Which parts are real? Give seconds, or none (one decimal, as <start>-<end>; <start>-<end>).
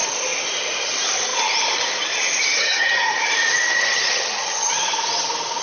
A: 0.0-2.5; 3.2-3.7; 4.7-5.6